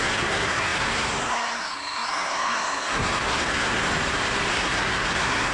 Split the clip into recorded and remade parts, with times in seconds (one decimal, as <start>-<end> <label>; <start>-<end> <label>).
0.0-3.8 remade; 3.8-4.5 recorded; 4.5-5.5 remade